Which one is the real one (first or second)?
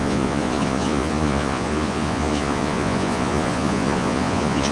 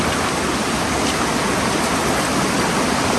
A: second